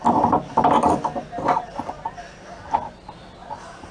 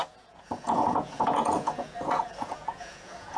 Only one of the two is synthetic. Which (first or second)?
second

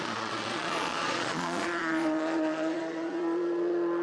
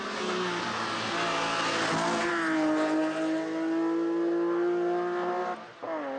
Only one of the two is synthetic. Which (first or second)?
first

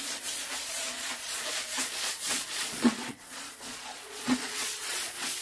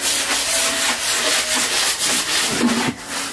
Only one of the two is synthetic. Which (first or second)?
first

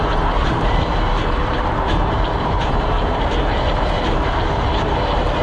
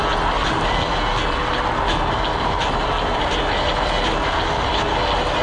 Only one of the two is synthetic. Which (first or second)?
first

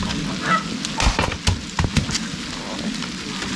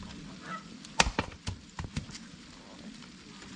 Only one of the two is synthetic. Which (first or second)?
second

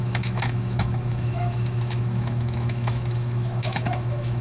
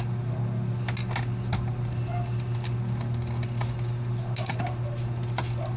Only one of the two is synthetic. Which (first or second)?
first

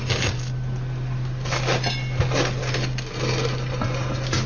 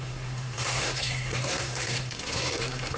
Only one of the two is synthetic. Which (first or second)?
second